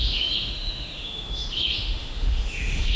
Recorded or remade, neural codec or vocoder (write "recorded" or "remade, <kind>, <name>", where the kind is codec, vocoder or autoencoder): remade, autoencoder, DAC-VAE